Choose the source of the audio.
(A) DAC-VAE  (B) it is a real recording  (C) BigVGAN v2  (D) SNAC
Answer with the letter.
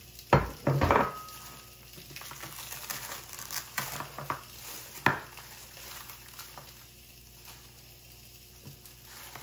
B